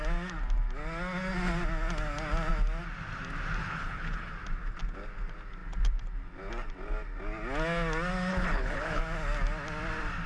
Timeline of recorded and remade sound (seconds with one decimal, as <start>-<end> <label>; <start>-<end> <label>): 0.0-3.6 recorded; 3.6-4.3 remade; 4.3-8.3 recorded; 8.3-9.0 remade; 9.0-10.3 recorded